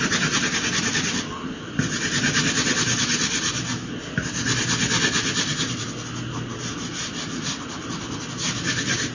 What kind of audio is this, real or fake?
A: real